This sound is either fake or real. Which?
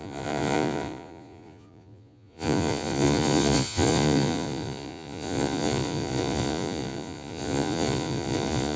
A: fake